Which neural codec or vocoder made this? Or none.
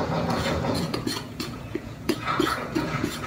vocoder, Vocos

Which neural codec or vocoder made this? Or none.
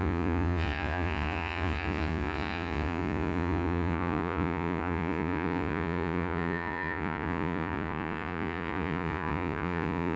vocoder, Vocos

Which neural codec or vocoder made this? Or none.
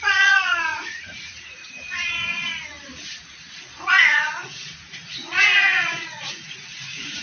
vocoder, Vocos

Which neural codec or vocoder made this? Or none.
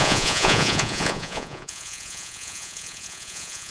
vocoder, Vocos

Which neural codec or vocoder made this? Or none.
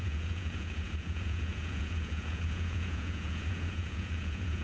vocoder, Vocos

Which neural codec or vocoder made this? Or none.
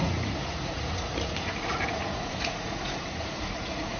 vocoder, Vocos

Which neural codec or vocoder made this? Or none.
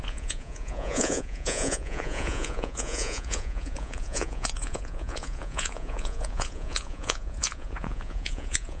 vocoder, Vocos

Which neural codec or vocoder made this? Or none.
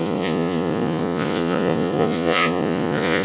vocoder, Vocos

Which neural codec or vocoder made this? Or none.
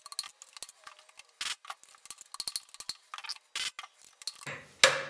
none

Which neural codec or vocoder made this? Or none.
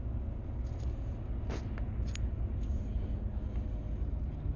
none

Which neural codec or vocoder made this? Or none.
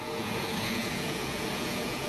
vocoder, Vocos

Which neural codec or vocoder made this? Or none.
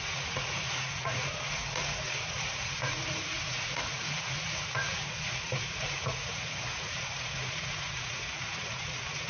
vocoder, Vocos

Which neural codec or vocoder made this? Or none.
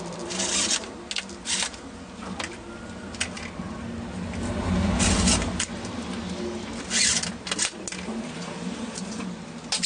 none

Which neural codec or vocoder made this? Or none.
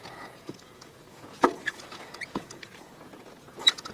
vocoder, Vocos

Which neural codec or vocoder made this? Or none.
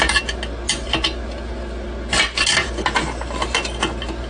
none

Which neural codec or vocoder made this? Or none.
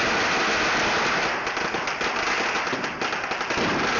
none